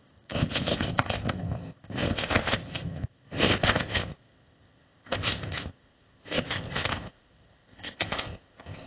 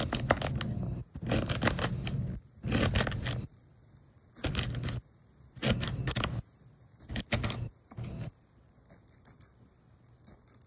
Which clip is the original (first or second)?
second